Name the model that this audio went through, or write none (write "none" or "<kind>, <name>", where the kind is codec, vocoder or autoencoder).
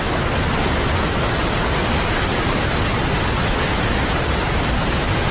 none